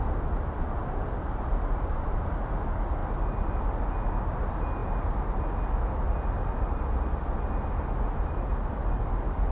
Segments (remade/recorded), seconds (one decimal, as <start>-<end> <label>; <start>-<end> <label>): 0.0-0.8 recorded; 0.8-2.0 remade; 2.0-9.5 recorded